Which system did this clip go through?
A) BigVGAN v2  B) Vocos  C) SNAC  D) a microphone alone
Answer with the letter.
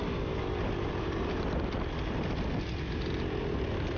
D